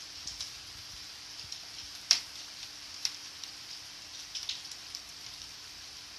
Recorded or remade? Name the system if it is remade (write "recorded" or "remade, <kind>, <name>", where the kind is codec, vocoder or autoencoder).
remade, vocoder, BigVGAN v2